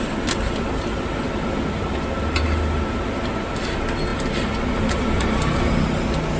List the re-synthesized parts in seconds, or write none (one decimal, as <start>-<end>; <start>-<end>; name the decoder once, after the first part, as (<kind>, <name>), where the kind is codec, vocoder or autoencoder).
0.0-4.1 (vocoder, BigVGAN v2)